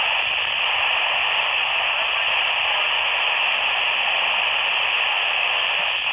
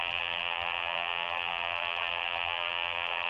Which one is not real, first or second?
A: second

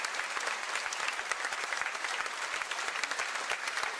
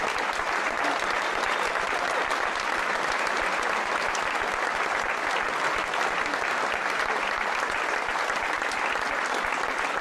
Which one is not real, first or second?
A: first